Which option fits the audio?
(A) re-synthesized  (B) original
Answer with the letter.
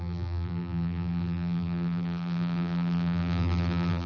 A